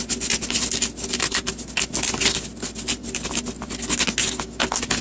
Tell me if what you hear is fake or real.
real